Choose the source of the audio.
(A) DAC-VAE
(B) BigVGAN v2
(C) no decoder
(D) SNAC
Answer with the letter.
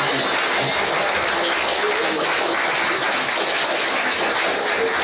C